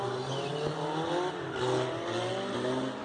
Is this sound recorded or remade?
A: recorded